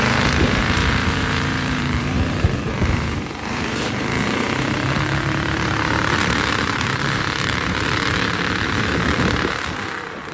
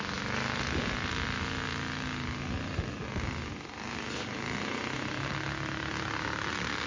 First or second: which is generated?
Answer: first